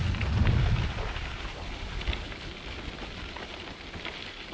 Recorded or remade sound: recorded